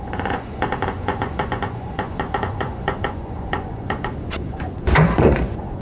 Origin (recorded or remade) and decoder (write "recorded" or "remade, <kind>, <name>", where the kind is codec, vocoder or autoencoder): remade, vocoder, Vocos